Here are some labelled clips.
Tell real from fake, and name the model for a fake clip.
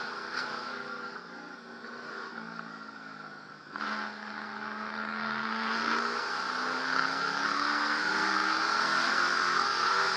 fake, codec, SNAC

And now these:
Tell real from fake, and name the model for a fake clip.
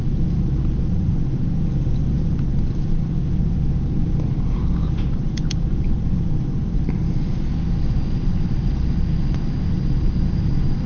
fake, vocoder, BigVGAN v2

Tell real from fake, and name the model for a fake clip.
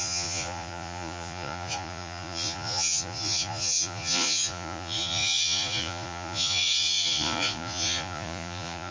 fake, vocoder, Vocos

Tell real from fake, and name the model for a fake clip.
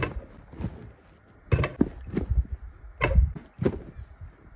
real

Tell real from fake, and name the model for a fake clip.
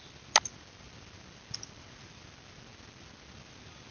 real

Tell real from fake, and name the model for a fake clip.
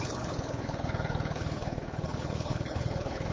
fake, codec, HILCodec